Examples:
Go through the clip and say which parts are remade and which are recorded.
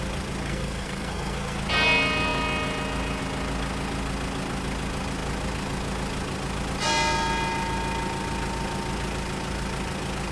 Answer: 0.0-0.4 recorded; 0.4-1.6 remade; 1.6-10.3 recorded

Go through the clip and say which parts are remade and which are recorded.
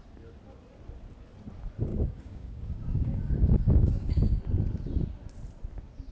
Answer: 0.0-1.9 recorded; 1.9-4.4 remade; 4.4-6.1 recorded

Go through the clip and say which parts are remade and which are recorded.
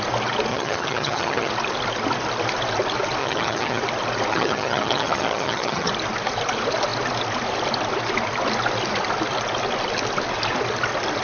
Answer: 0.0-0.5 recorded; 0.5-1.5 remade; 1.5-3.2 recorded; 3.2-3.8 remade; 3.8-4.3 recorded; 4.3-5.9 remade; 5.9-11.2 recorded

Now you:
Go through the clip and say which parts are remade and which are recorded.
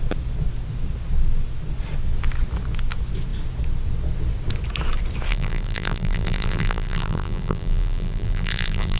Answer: 0.0-5.3 recorded; 5.3-9.0 remade